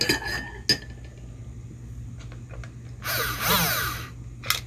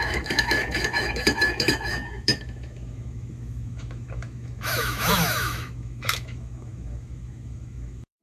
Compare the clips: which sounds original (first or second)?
first